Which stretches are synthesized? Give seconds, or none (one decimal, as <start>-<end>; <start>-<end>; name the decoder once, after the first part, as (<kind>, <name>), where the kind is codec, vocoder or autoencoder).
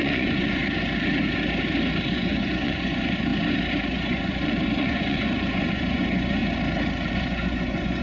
0.0-0.6 (vocoder, Vocos); 2.1-3.3; 3.9-6.4; 7.1-8.0